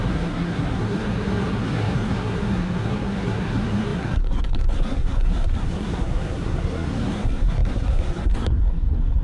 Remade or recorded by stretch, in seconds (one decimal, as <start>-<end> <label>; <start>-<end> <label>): 0.0-9.2 remade